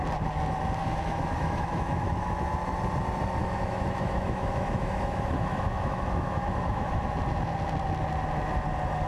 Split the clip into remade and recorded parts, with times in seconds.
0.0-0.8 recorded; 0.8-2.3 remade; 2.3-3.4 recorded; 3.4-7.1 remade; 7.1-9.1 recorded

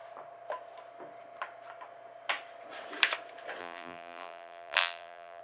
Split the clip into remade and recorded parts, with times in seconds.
0.0-3.6 recorded; 3.6-5.4 remade

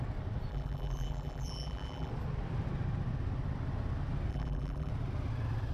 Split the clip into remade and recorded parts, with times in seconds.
0.0-0.5 recorded; 0.5-2.1 remade; 2.1-4.3 recorded; 4.3-4.9 remade; 4.9-5.7 recorded

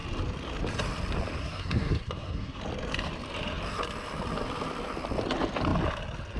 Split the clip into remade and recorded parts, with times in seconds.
0.0-1.4 recorded; 1.4-2.6 remade; 2.6-6.4 recorded

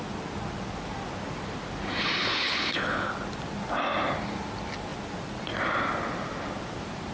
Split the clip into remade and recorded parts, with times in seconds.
0.0-2.2 recorded; 2.2-3.1 remade; 3.1-7.1 recorded

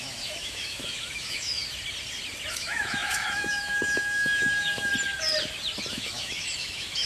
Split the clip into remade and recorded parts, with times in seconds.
0.0-1.6 remade; 1.6-2.5 recorded; 2.5-4.9 remade; 4.9-5.9 recorded; 5.9-7.1 remade

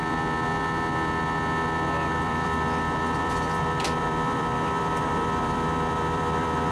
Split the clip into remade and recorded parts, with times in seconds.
0.0-2.1 recorded; 2.1-6.7 remade

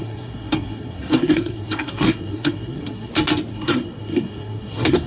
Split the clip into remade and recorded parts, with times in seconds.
0.0-3.1 remade; 3.1-3.5 recorded; 3.5-5.1 remade